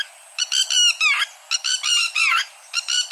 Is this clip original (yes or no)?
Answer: yes